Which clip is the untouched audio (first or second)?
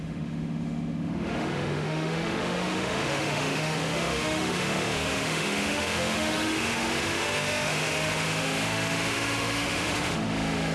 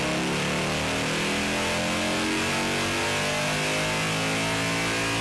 second